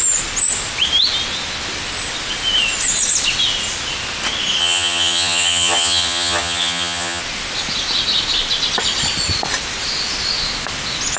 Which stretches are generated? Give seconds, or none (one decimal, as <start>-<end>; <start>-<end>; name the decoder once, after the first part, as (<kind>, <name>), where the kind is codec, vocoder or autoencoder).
4.6-7.2 (vocoder, HiFi-GAN)